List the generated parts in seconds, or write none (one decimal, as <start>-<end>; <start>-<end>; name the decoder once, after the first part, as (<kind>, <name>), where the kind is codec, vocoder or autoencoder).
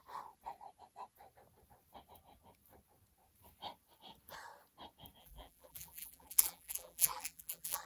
5.2-7.9 (vocoder, BigVGAN v2)